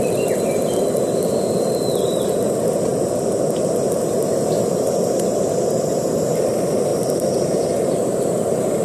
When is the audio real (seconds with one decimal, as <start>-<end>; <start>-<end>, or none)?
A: 0.0-6.9